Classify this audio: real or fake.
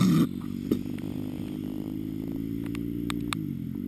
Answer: real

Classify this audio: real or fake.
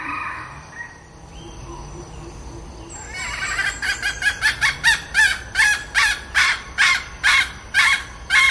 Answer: fake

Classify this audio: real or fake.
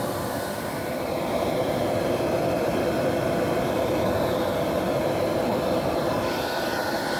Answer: fake